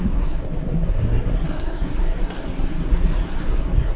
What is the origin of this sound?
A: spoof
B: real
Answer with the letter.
A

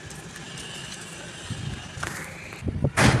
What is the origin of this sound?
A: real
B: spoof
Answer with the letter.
A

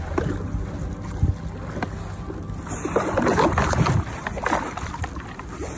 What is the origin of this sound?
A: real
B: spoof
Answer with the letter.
A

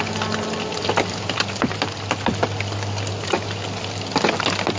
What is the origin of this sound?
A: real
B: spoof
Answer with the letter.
A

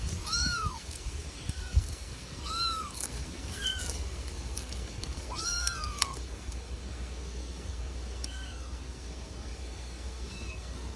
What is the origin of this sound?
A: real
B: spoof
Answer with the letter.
B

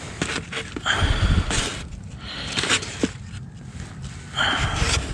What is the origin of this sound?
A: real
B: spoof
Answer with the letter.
A